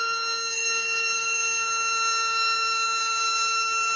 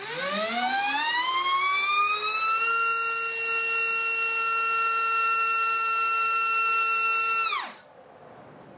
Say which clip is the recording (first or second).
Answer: second